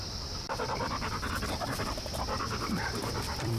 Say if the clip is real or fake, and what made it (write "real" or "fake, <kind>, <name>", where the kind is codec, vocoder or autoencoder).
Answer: fake, vocoder, BigVGAN v2